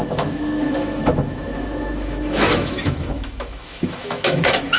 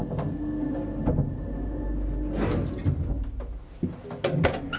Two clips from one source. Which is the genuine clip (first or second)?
second